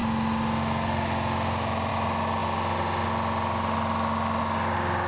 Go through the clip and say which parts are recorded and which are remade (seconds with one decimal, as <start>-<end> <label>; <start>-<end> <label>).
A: 0.0-5.1 recorded